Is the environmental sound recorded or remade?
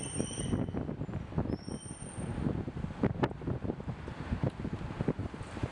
recorded